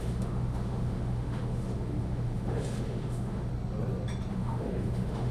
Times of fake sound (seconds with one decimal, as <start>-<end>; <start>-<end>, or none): 0.0-3.5; 4.3-5.3